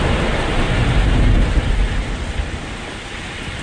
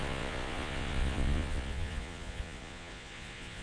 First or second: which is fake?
second